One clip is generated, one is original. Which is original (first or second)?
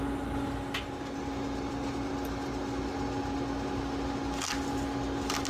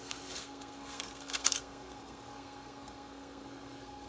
first